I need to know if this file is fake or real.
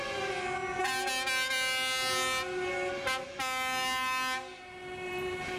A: real